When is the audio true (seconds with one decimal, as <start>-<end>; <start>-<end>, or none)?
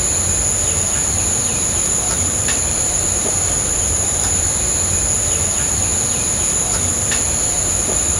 0.0-1.5; 4.5-8.2